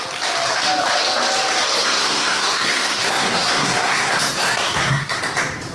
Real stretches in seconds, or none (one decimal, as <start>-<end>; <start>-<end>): 0.0-1.8; 5.2-5.7